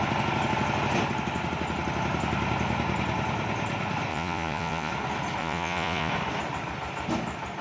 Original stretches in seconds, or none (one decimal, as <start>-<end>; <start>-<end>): 0.0-4.1; 4.9-5.4; 6.1-7.6